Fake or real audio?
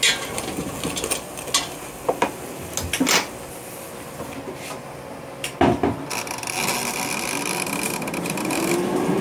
real